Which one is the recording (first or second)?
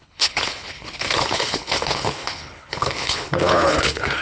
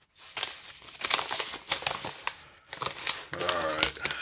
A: second